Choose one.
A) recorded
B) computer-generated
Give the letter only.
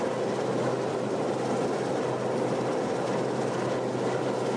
A